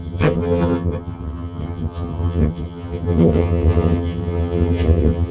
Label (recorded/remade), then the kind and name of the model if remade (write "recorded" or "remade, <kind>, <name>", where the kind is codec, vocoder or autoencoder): remade, vocoder, HiFi-GAN